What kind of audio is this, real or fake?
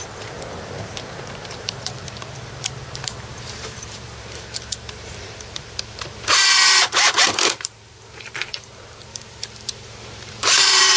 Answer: fake